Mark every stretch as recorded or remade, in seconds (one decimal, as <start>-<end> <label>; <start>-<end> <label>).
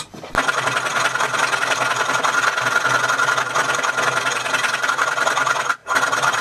0.0-5.8 recorded; 5.8-6.4 remade